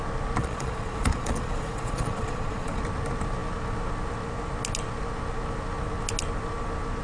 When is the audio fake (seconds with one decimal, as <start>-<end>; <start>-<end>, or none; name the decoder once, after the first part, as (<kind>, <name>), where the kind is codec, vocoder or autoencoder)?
0.4-2.8 (vocoder, Vocos)